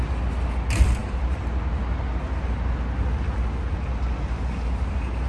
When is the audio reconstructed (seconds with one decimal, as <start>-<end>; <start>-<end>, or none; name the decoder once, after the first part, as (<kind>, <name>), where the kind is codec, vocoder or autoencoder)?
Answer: 1.0-1.5 (vocoder, BigVGAN v2)